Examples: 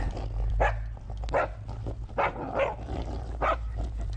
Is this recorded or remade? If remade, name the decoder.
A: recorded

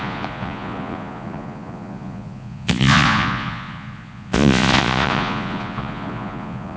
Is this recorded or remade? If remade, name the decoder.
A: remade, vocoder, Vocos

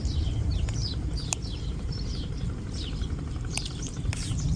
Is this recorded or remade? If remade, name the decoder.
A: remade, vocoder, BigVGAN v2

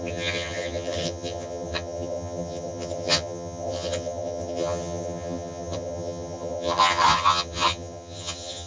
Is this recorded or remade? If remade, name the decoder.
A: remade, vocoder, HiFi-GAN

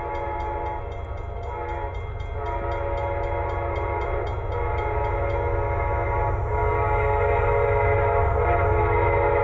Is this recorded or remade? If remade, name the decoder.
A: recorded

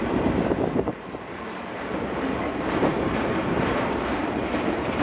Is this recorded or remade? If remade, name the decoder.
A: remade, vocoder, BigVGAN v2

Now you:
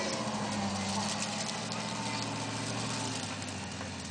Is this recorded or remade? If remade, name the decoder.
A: recorded